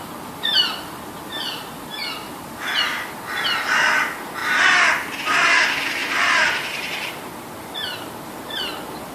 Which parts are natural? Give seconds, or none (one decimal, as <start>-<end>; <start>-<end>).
0.0-6.0; 7.3-9.1